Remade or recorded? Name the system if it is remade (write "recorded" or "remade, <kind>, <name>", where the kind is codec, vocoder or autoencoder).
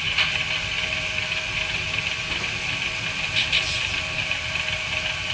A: recorded